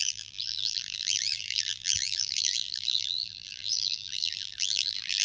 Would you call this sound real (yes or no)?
no